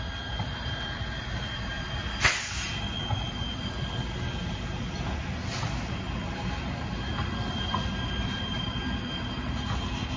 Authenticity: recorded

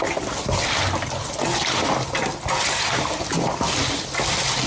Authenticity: recorded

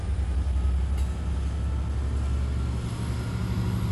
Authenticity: recorded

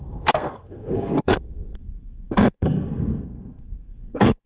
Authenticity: remade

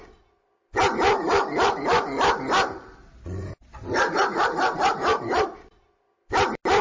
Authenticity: recorded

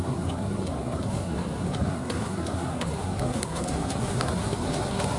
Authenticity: remade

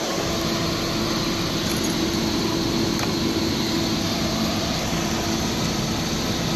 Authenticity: recorded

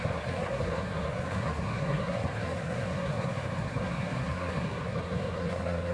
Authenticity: remade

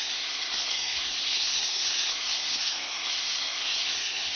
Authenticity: remade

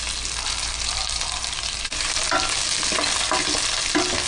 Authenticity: recorded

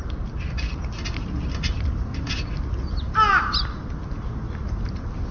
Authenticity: recorded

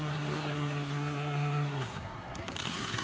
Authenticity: remade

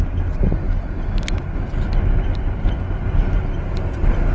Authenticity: recorded